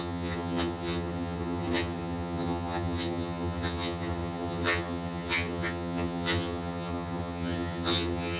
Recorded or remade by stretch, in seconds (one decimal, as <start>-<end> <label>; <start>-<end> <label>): 0.0-8.4 remade